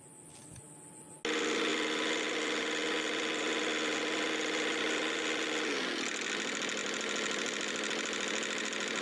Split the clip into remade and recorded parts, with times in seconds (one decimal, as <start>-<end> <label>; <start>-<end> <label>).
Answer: 0.0-9.0 recorded

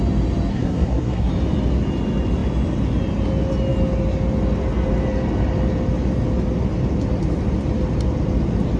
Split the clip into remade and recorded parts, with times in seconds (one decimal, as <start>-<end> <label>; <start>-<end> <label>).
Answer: 0.0-0.5 recorded; 0.5-1.3 remade; 1.3-8.8 recorded

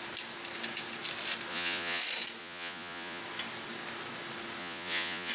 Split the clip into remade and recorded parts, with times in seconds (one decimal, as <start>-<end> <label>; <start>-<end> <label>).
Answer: 0.0-1.5 recorded; 1.5-2.0 remade; 2.0-2.4 recorded; 2.4-3.2 remade; 3.2-4.6 recorded; 4.6-5.3 remade

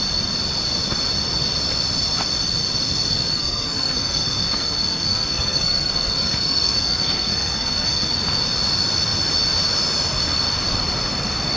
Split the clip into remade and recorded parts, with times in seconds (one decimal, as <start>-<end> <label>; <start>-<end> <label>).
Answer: 0.0-3.1 recorded; 3.1-8.1 remade; 8.1-11.6 recorded

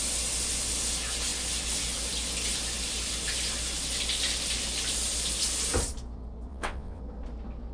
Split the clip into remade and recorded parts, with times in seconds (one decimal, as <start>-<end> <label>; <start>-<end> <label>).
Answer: 0.0-6.5 recorded; 6.5-7.0 remade; 7.0-7.7 recorded